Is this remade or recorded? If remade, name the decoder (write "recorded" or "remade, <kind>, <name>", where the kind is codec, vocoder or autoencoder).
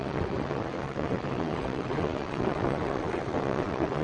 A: remade, vocoder, WaveNeXt